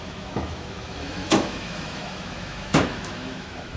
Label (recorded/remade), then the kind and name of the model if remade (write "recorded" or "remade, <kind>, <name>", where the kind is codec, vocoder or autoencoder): remade, autoencoder, DAC-VAE